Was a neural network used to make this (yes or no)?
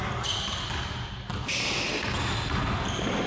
no